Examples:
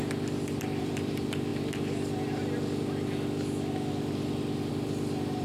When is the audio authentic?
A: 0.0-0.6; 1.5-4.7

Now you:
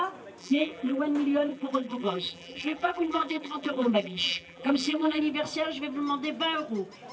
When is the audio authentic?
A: 0.0-0.4; 1.0-1.5; 5.2-7.1

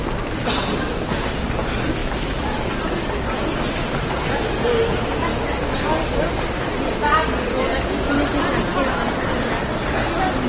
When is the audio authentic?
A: 0.0-2.0; 2.7-10.5

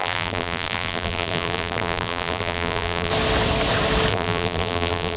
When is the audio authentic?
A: 3.1-4.1

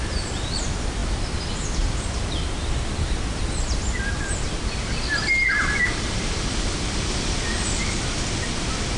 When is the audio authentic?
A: 0.0-9.0

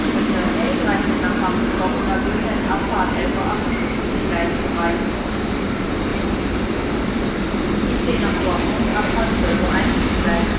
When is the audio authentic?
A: 0.0-6.1; 7.0-8.9; 9.7-10.6